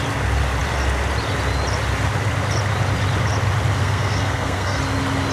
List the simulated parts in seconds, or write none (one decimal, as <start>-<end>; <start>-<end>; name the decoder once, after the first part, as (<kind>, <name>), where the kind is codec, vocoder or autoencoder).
3.8-4.8 (codec, SNAC)